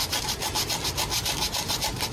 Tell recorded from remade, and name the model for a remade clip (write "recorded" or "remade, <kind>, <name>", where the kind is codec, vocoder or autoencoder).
recorded